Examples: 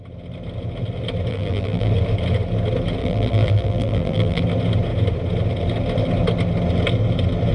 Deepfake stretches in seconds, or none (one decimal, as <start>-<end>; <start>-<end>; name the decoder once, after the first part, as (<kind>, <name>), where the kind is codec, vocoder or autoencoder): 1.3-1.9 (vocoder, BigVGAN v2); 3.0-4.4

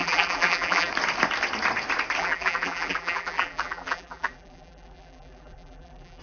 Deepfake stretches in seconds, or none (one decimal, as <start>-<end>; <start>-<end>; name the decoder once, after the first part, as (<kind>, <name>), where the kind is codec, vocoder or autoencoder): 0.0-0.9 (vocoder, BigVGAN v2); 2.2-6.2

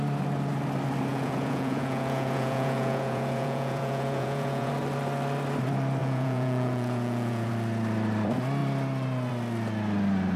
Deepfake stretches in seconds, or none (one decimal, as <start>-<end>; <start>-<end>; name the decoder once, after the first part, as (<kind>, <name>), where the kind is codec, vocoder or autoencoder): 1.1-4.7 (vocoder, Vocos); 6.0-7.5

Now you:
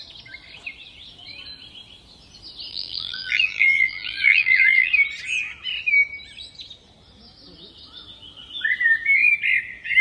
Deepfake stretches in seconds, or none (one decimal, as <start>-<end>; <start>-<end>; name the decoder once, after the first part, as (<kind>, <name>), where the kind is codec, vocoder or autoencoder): 2.7-4.9 (vocoder, BigVGAN v2)

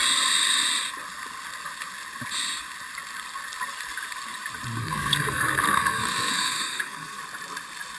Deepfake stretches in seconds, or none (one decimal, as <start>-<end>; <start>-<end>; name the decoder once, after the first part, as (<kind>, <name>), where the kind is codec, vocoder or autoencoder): 4.8-7.2 (codec, SNAC)

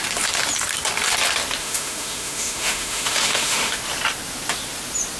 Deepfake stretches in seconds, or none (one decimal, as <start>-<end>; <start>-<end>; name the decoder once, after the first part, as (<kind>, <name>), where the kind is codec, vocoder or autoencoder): 1.6-3.8 (autoencoder, DAC-VAE)

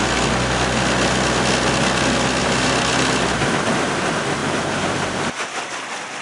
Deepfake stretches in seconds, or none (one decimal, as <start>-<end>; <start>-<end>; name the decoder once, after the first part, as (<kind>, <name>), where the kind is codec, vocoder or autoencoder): 2.4-2.9 (vocoder, BigVGAN v2); 4.4-5.8